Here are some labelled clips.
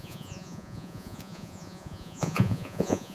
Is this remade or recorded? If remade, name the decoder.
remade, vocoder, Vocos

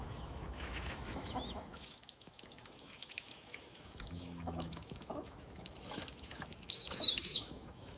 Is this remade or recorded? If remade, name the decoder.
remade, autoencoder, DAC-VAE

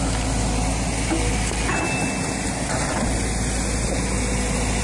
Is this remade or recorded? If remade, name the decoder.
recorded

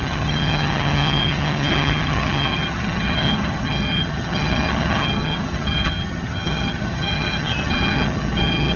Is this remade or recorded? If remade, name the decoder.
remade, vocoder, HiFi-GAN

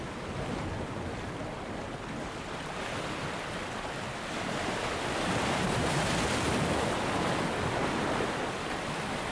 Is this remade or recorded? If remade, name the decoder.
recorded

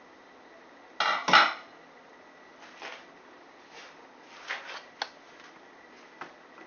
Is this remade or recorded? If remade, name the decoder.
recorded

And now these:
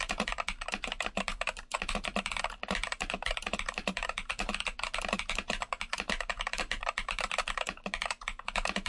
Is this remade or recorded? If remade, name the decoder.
remade, vocoder, BigVGAN v2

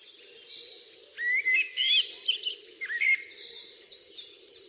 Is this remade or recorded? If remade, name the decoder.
recorded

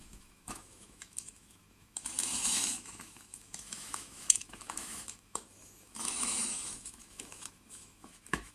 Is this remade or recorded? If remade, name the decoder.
remade, autoencoder, DAC-VAE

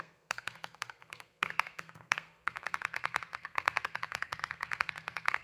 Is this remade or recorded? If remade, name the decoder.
remade, codec, SNAC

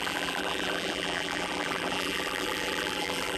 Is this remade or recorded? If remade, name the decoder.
remade, vocoder, BigVGAN v2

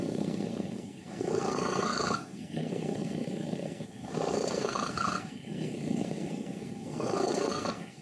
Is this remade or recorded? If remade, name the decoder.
remade, codec, SNAC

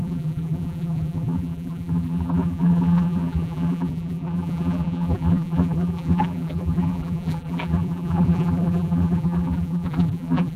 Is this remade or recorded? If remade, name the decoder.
remade, vocoder, BigVGAN v2